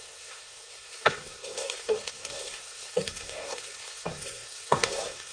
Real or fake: fake